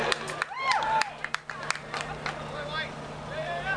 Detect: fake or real real